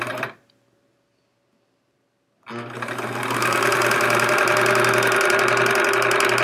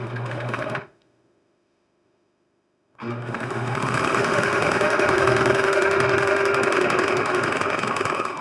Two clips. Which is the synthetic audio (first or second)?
second